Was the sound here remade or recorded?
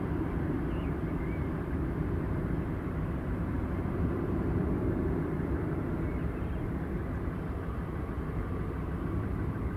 remade